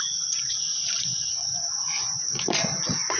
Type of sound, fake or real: fake